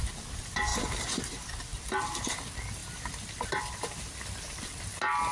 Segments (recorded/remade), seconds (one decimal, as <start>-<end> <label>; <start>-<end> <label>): 0.0-5.3 recorded